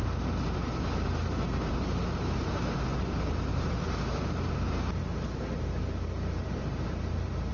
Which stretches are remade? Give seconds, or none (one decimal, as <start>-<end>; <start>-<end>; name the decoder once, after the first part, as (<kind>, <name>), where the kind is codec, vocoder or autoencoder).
0.0-7.5 (vocoder, BigVGAN v2)